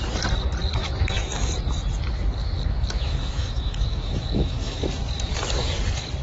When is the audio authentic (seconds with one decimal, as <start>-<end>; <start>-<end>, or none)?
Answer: 0.0-0.8; 1.5-2.4; 4.8-6.2